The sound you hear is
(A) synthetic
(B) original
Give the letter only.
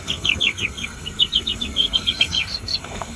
A